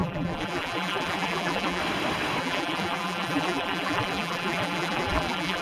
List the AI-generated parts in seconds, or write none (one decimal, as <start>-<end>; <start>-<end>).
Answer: 0.0-1.8; 2.4-5.6